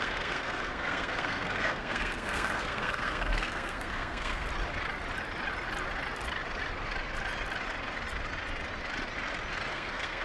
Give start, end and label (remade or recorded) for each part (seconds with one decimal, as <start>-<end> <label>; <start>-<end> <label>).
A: 0.0-4.5 remade; 4.5-9.7 recorded; 9.7-10.2 remade